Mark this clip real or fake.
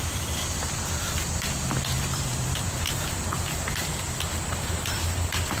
fake